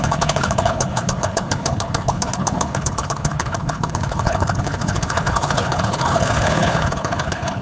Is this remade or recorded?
remade